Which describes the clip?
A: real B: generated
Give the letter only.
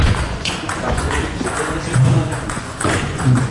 B